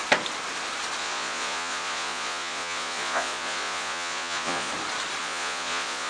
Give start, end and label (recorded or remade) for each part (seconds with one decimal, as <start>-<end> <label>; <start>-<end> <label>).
0.0-1.0 recorded; 1.0-4.7 remade; 4.7-5.2 recorded; 5.2-6.1 remade